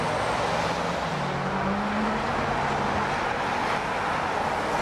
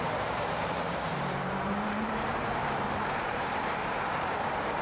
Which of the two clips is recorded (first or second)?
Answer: first